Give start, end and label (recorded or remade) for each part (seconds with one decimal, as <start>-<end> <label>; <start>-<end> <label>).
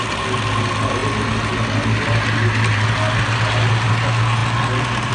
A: 0.0-5.1 recorded